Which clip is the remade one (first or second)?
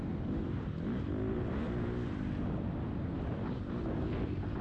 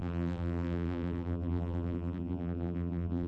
second